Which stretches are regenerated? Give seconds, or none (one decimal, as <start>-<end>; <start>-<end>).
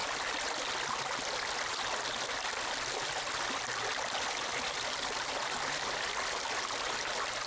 none